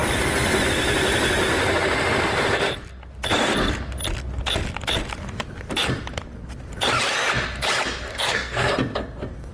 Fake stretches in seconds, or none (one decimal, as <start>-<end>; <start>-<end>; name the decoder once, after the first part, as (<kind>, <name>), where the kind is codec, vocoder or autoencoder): 8.1-8.7 (codec, SNAC)